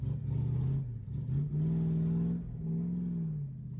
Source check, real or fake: real